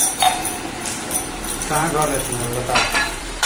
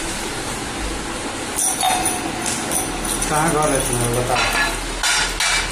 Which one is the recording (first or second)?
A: second